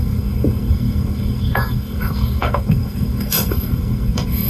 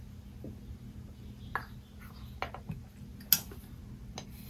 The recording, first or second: second